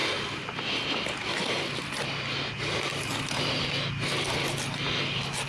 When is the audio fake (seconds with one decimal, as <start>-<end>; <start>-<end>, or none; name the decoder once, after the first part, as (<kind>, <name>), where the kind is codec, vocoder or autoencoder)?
none